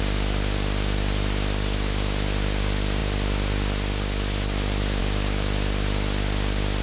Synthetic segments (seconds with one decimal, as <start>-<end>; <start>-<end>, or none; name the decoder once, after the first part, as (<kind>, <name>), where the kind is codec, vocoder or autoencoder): none